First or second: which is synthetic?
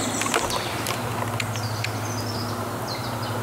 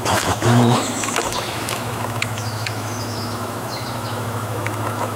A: second